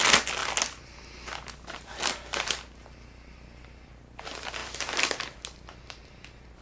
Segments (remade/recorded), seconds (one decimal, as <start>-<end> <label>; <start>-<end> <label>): 0.0-6.6 recorded